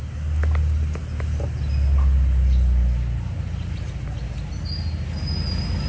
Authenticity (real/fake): real